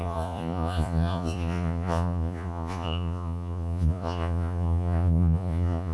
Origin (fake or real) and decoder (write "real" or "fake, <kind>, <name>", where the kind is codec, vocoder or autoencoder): fake, vocoder, Vocos